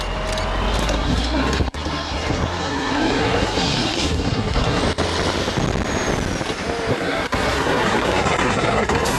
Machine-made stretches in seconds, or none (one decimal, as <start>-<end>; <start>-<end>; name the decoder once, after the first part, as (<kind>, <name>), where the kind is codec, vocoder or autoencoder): 0.8-4.8 (codec, SNAC); 6.9-9.2